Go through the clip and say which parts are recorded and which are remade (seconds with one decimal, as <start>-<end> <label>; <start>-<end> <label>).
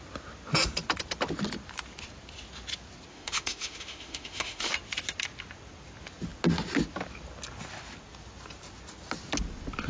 0.0-3.1 recorded; 3.1-4.7 remade; 4.7-9.9 recorded